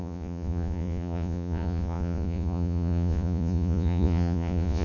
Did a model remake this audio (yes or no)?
yes